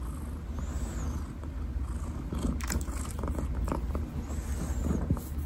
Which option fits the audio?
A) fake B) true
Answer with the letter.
B